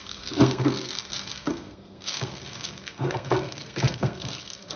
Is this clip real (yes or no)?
no